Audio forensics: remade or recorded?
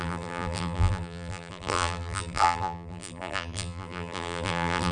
remade